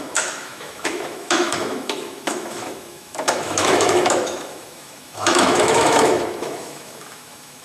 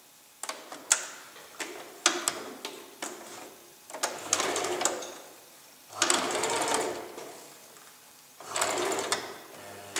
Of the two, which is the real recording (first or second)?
second